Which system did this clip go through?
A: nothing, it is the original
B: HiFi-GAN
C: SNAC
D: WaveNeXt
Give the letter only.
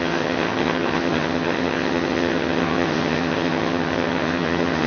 B